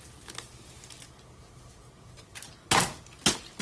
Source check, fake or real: real